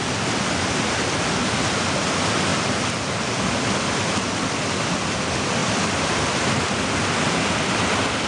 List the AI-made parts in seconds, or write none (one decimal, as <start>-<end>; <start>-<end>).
5.6-6.9